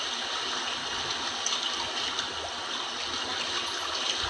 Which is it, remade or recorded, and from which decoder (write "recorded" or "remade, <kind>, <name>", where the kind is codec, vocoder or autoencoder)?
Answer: recorded